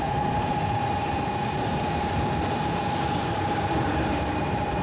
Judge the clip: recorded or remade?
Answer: remade